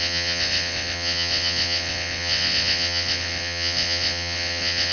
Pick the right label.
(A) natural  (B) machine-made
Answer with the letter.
B